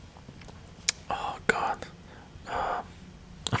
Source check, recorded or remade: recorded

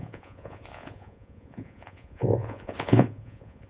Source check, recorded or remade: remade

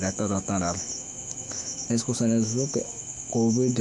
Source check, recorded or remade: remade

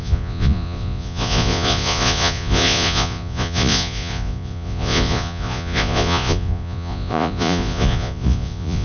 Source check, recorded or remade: remade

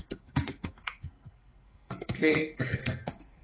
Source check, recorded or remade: remade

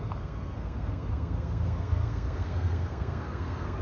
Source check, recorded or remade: remade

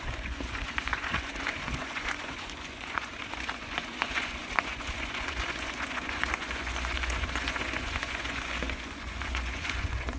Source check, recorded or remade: remade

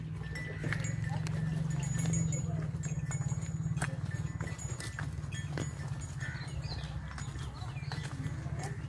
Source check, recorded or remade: recorded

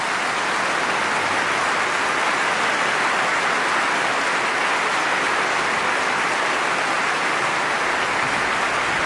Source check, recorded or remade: recorded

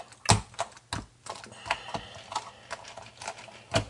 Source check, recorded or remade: recorded